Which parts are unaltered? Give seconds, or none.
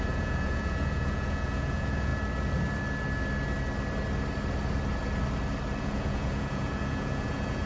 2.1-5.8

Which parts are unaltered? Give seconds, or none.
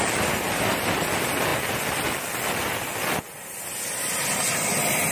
0.0-5.1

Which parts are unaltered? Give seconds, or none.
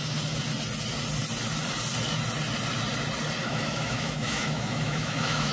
0.0-3.4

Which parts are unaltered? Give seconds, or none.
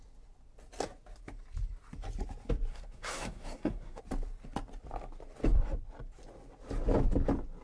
0.0-2.7; 4.0-7.6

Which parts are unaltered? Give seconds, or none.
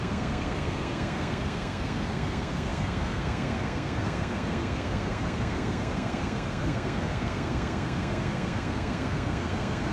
none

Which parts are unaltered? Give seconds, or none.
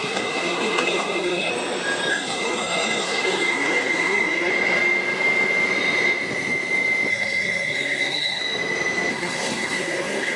1.5-2.1; 4.5-7.1; 8.4-9.1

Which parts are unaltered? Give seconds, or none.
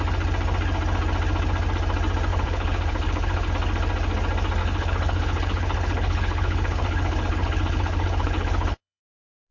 0.0-2.3; 3.5-4.6; 9.0-9.5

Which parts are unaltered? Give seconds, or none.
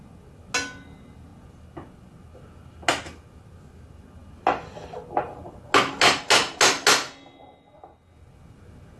0.0-9.0